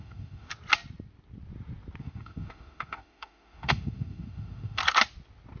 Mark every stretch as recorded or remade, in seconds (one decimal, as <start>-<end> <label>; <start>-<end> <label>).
0.0-0.5 remade; 0.5-2.0 recorded; 2.0-4.8 remade; 4.8-5.6 recorded